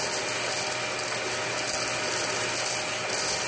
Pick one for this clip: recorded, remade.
recorded